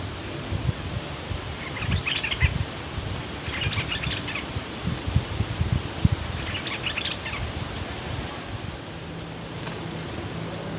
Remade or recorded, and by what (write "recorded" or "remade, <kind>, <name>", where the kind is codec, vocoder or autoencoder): remade, vocoder, BigVGAN v2